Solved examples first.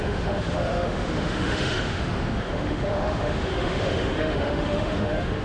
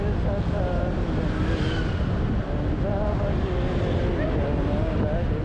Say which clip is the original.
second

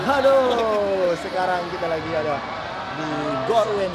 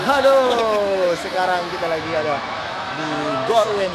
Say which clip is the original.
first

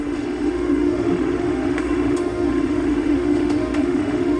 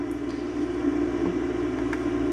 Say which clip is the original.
second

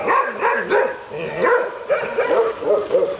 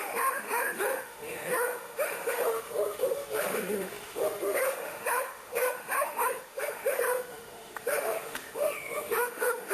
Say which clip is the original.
first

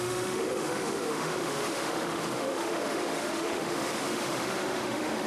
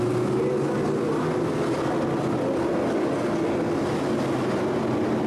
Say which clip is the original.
second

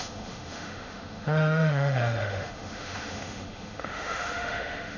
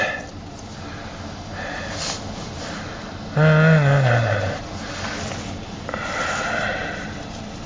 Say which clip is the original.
second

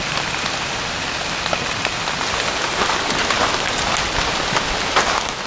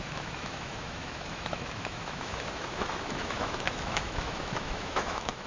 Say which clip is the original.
first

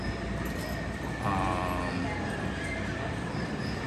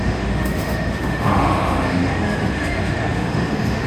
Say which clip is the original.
first